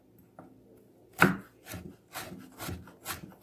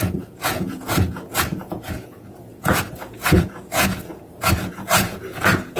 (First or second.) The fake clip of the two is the second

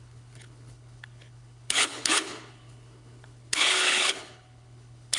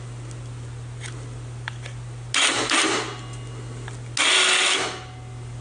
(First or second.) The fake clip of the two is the first